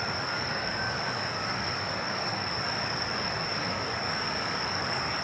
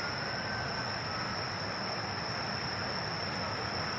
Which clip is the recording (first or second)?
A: second